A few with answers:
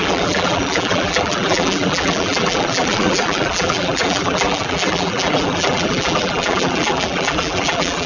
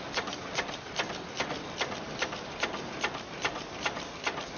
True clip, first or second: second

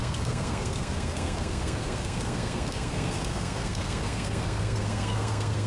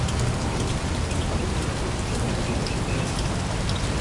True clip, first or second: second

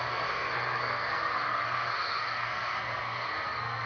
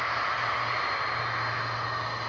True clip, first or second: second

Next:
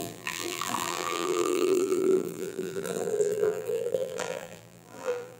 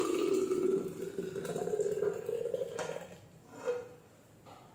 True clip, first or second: second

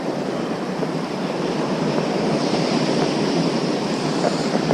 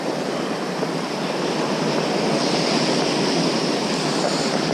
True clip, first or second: second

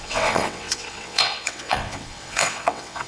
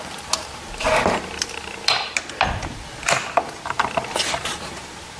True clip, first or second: second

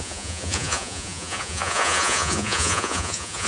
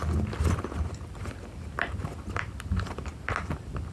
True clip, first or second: second